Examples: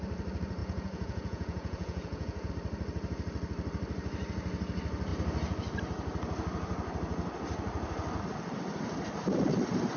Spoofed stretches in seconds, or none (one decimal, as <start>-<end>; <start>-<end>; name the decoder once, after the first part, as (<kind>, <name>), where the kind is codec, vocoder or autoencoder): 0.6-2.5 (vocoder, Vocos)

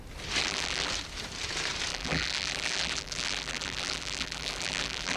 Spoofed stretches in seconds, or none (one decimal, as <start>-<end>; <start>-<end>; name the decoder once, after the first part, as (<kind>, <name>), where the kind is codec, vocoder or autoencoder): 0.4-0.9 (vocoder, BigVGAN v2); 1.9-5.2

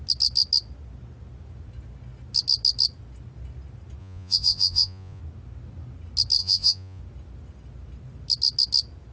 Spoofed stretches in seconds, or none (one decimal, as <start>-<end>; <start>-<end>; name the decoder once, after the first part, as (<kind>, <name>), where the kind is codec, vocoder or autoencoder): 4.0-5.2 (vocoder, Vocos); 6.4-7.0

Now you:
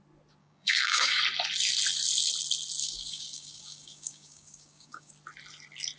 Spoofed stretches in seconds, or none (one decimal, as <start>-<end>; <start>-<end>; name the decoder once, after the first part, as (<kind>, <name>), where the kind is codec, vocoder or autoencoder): 0.4-1.2 (codec, DAC); 2.8-5.1